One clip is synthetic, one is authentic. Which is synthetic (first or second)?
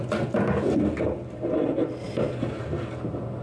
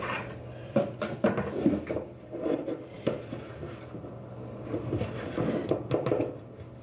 second